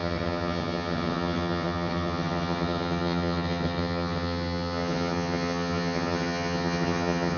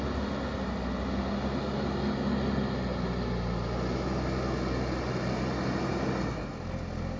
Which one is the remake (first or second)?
first